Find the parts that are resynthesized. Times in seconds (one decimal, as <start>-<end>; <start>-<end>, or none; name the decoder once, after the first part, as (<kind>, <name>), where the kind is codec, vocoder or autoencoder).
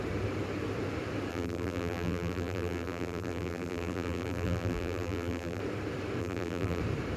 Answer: 1.3-5.6 (vocoder, BigVGAN v2); 6.2-6.8